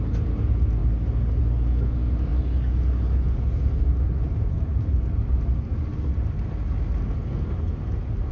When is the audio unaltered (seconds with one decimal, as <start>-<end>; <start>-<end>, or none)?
0.0-8.3

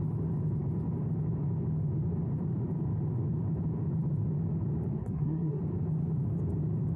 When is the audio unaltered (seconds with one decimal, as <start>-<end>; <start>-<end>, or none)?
0.0-5.0; 5.6-7.0

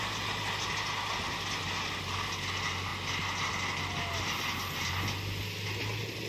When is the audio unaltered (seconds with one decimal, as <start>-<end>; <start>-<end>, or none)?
0.0-6.3

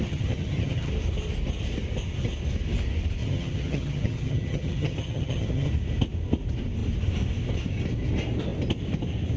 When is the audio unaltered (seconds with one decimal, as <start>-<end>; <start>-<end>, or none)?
0.9-3.2; 5.7-9.4

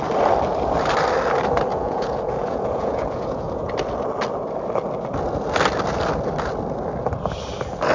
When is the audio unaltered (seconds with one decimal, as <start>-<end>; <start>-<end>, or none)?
0.0-1.7; 3.7-7.9

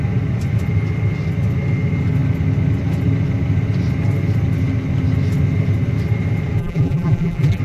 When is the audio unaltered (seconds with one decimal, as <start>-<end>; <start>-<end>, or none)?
0.0-6.6